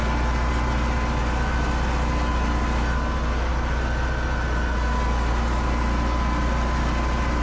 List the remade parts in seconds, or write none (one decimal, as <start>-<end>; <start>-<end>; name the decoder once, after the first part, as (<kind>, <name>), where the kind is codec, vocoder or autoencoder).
none